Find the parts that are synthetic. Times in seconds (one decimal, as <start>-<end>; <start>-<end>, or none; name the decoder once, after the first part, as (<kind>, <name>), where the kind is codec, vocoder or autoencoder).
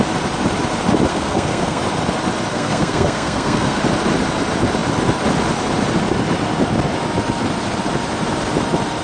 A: 1.1-1.8 (codec, SNAC); 2.5-3.8